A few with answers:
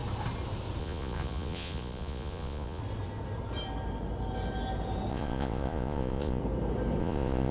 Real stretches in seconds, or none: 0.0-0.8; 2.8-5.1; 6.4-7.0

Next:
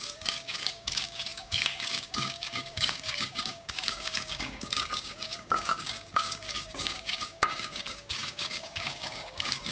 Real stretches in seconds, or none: none

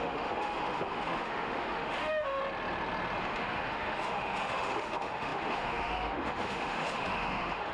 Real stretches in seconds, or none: 2.4-3.2

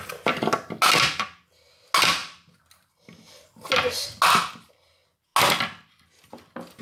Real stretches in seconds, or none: 0.0-6.8